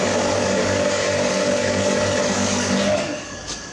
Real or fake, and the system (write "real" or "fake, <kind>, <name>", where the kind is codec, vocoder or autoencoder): fake, codec, DAC